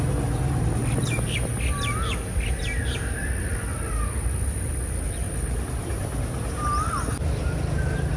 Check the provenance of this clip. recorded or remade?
recorded